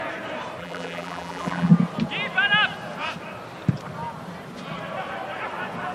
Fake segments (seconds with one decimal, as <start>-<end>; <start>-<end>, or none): 0.6-1.7